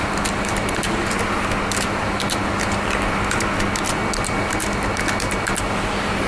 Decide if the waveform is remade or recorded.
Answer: recorded